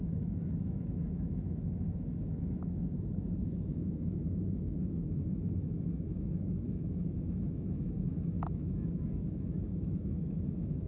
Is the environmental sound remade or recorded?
remade